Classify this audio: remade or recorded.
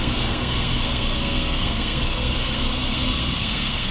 remade